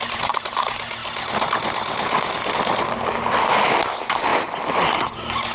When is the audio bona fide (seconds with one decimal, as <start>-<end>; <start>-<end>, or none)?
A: 0.0-4.3; 5.0-5.5